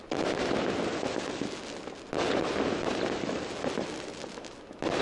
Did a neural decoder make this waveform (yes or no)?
no